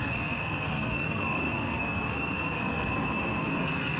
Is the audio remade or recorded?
remade